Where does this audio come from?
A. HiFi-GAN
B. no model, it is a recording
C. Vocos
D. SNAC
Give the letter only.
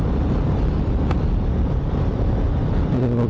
B